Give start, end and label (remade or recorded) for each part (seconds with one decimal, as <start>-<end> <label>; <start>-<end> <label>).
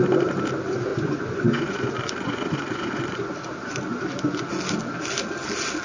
0.0-0.9 recorded; 0.9-3.3 remade; 3.3-5.8 recorded